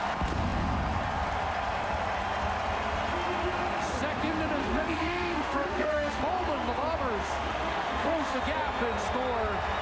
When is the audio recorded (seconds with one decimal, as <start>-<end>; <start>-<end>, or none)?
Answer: 0.0-4.6; 6.2-7.2; 8.4-9.8